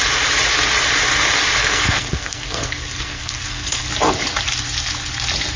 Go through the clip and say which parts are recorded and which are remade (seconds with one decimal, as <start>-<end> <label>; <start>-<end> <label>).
0.0-1.6 recorded; 1.6-3.9 remade; 3.9-5.6 recorded

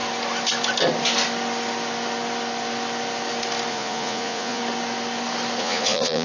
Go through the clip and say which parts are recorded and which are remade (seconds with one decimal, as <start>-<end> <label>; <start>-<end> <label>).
0.0-3.7 recorded; 3.7-4.6 remade; 4.6-5.6 recorded; 5.6-6.2 remade

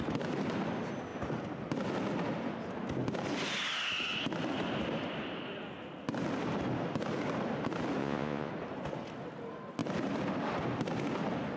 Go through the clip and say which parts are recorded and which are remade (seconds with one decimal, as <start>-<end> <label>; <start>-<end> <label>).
0.0-8.0 recorded; 8.0-8.5 remade; 8.5-11.6 recorded

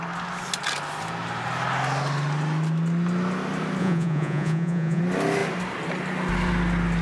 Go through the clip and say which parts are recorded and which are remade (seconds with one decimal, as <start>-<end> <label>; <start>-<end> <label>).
0.0-3.8 recorded; 3.8-5.0 remade; 5.0-7.0 recorded

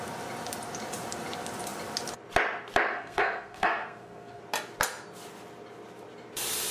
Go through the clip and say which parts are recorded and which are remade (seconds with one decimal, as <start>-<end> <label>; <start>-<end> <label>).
0.0-2.9 recorded; 2.9-4.4 remade; 4.4-6.7 recorded

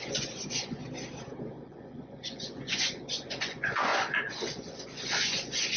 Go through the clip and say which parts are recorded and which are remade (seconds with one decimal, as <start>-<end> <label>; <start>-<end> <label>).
0.0-0.8 remade; 0.8-1.6 recorded; 1.6-5.8 remade